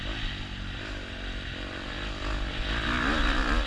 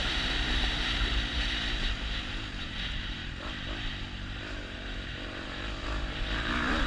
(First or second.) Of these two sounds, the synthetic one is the second